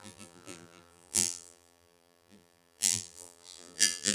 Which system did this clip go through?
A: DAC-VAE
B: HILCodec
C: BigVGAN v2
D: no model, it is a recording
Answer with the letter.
C